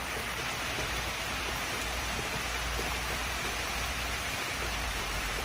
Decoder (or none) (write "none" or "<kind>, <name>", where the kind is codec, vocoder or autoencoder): vocoder, BigVGAN v2